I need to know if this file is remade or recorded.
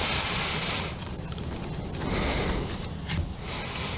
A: recorded